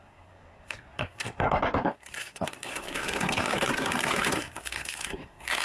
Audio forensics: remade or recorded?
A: remade